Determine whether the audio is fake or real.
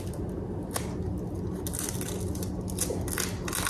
real